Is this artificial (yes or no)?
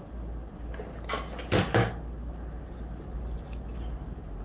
no